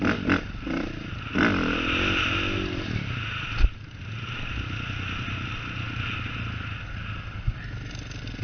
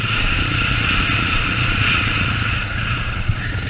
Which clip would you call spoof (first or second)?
second